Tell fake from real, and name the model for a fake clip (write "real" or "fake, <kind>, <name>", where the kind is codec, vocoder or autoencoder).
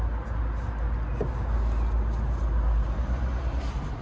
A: real